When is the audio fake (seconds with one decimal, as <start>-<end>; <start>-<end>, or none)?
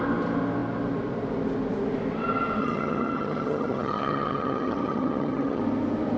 2.6-5.6